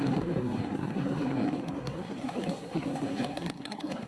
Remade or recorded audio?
remade